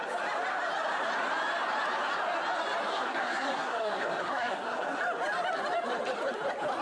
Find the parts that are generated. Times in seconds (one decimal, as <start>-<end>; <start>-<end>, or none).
2.9-5.0